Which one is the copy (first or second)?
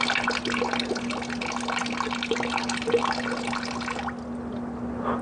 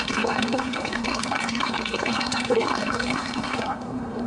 second